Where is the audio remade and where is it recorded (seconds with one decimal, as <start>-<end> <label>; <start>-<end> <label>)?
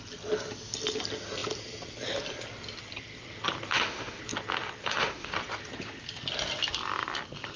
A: 0.0-3.7 recorded; 3.7-4.2 remade; 4.2-4.8 recorded; 4.8-5.3 remade; 5.3-7.6 recorded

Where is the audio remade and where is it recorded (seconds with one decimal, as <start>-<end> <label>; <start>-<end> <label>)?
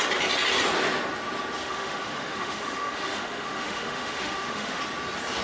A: 0.0-1.6 recorded; 1.6-4.8 remade; 4.8-5.4 recorded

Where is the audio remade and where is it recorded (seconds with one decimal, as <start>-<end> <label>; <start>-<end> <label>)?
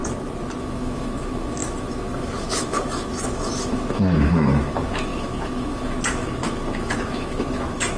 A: 0.0-0.6 recorded; 0.6-8.0 remade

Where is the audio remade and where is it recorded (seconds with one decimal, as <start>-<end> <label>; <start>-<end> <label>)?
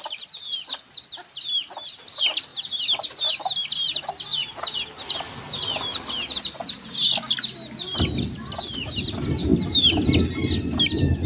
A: 0.0-11.3 recorded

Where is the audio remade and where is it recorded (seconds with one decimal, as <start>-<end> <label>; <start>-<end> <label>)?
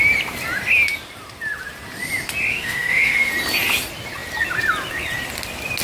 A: 0.0-2.5 recorded; 2.5-3.3 remade; 3.3-5.8 recorded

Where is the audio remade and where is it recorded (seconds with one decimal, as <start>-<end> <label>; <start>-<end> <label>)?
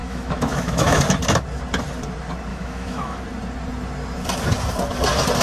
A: 0.0-1.0 remade; 1.0-2.5 recorded; 2.5-3.2 remade; 3.2-5.4 recorded